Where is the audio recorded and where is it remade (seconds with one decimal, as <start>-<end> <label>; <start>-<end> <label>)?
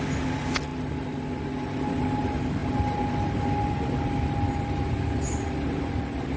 0.0-6.4 recorded